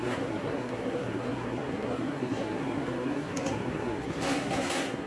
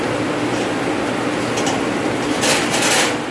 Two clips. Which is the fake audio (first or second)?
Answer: first